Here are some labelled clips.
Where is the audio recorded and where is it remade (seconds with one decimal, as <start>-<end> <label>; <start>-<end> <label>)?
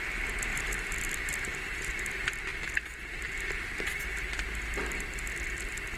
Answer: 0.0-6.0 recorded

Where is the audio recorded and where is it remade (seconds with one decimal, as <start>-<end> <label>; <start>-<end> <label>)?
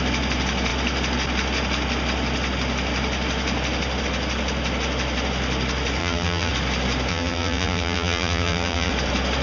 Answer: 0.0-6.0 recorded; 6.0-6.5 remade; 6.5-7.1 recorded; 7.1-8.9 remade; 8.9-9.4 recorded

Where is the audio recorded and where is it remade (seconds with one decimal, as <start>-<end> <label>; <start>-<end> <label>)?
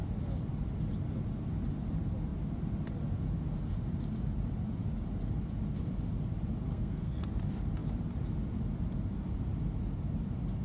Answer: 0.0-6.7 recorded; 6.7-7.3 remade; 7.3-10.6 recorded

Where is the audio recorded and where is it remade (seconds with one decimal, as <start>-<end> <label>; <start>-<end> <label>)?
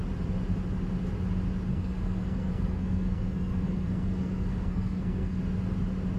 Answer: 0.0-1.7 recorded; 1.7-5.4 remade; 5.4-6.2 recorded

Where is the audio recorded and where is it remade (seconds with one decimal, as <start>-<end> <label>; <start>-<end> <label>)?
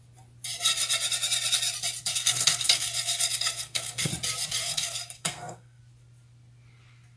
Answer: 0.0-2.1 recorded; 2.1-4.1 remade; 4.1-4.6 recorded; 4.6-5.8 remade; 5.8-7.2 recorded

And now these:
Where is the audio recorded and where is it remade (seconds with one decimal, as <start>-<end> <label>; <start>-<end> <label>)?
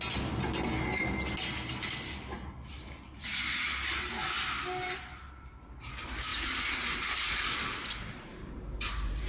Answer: 0.0-6.3 recorded; 6.3-7.3 remade; 7.3-8.3 recorded; 8.3-9.3 remade